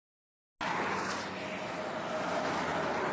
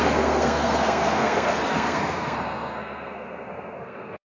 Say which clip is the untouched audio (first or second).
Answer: first